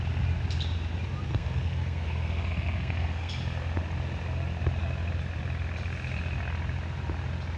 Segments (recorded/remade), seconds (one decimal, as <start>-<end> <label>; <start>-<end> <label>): 0.0-1.3 recorded; 1.3-3.3 remade; 3.3-7.6 recorded